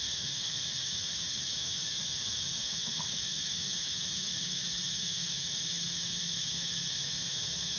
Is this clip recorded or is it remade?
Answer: remade